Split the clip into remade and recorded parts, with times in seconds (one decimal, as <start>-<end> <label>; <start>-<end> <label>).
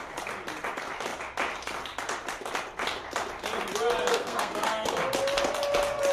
0.0-4.1 recorded; 4.1-5.0 remade; 5.0-6.1 recorded